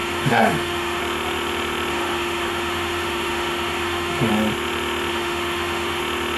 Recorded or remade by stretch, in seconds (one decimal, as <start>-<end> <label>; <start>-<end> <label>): 0.0-1.0 remade; 1.0-1.9 recorded; 1.9-4.3 remade; 4.3-5.1 recorded; 5.1-6.0 remade; 6.0-6.4 recorded